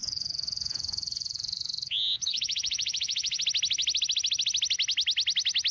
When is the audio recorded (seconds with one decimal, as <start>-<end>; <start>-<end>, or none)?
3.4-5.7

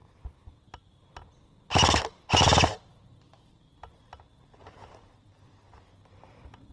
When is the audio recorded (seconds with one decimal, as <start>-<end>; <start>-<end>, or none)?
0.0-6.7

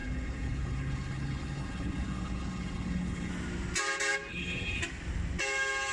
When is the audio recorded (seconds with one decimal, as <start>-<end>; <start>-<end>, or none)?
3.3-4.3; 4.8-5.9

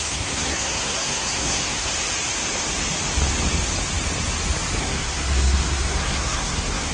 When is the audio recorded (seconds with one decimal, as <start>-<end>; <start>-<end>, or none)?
1.9-4.8

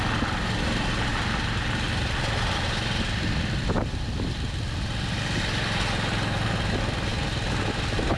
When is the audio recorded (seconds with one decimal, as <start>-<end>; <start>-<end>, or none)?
0.0-8.2